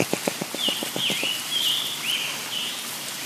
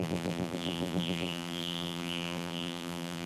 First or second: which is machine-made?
second